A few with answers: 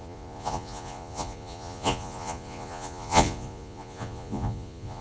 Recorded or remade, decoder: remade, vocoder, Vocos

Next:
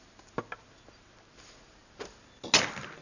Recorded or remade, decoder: recorded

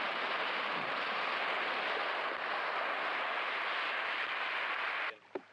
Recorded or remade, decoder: recorded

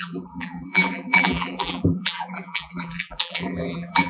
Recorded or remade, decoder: remade, vocoder, BigVGAN v2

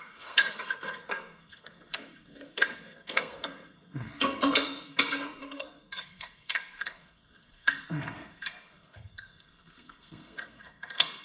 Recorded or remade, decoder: remade, codec, SNAC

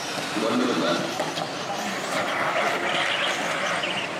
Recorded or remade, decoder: recorded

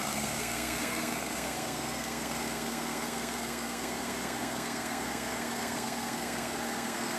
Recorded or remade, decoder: remade, codec, SNAC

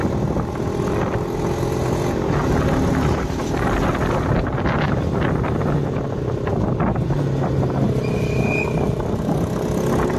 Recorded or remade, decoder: recorded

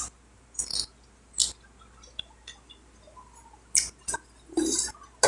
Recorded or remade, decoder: recorded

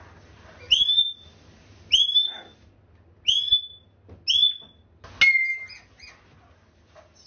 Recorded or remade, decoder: recorded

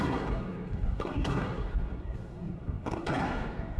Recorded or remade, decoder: remade, codec, SNAC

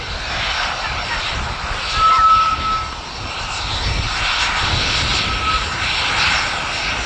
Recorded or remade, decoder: recorded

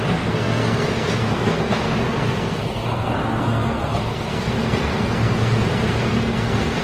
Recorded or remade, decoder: remade, codec, SNAC